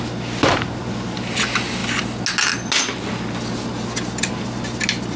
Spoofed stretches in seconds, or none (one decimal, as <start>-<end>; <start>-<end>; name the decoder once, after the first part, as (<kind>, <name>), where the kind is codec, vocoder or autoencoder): none